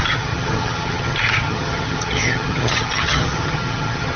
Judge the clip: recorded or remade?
remade